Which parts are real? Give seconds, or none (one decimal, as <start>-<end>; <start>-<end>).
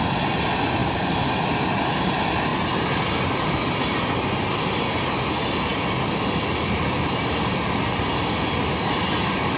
0.0-9.6